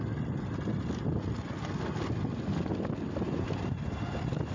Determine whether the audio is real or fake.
real